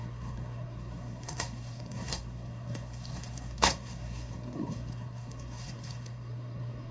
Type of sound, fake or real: fake